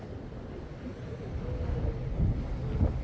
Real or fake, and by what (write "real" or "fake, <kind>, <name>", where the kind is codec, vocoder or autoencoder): real